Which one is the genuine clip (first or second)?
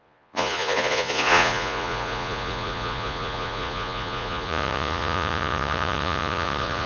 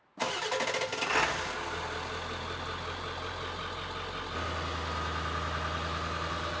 second